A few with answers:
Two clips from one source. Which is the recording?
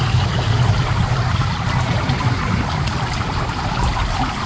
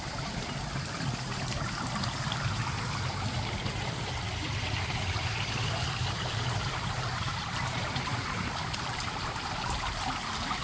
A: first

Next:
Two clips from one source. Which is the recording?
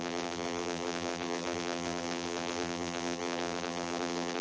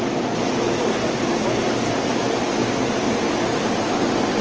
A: second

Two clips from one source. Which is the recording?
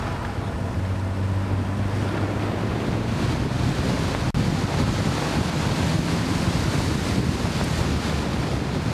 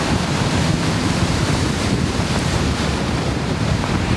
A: first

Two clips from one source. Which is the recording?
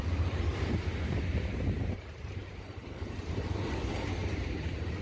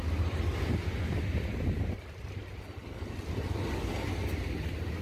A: second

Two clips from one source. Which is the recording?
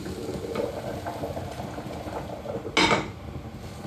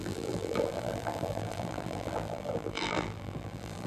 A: first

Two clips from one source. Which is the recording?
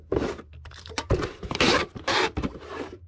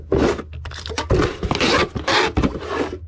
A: second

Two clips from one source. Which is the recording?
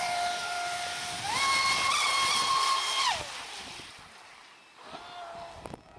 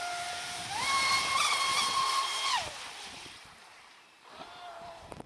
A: first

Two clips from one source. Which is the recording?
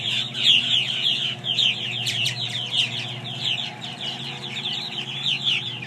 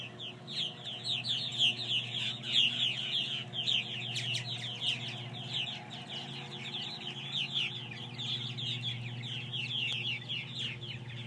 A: second